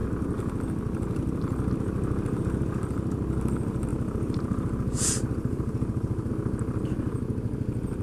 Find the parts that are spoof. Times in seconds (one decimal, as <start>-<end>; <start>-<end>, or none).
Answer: 3.9-6.3